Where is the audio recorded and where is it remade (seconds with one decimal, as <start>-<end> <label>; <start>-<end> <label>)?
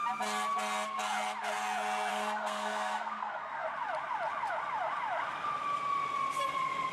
0.0-2.1 recorded; 2.1-3.7 remade; 3.7-6.9 recorded